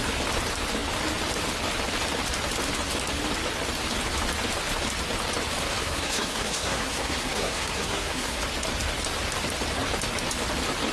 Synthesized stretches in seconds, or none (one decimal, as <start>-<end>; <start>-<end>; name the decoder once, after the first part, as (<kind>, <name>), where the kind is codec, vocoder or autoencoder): 5.8-8.4 (codec, SNAC)